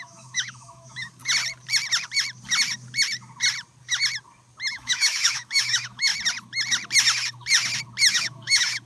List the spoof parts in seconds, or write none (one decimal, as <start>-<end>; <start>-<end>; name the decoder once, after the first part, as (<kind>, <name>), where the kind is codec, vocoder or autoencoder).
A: 0.0-1.2 (autoencoder, DAC-VAE); 4.7-6.1; 8.1-8.9